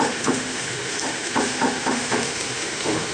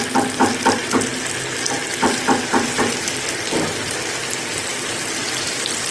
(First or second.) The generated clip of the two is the first